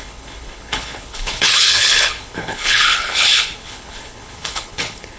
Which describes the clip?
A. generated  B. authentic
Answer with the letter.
A